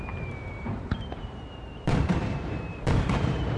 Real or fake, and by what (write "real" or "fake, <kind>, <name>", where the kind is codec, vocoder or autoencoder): fake, vocoder, BigVGAN v2